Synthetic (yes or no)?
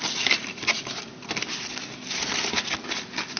no